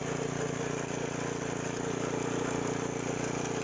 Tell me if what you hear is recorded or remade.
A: recorded